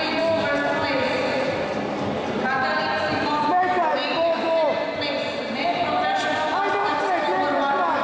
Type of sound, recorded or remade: recorded